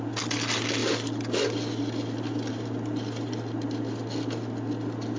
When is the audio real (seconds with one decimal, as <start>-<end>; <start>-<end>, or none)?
0.0-5.2